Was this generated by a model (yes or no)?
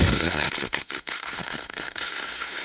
yes